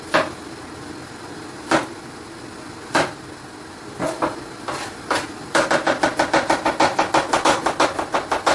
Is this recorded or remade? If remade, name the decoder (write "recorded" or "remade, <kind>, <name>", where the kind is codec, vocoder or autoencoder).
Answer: recorded